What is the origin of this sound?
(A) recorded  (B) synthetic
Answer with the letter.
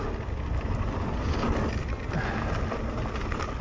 A